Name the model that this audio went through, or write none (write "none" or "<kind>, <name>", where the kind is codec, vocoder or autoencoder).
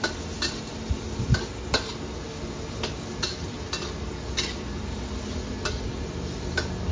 none